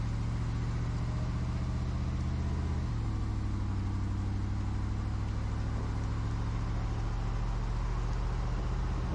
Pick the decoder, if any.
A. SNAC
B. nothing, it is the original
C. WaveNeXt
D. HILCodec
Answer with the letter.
B